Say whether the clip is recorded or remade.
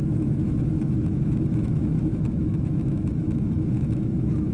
remade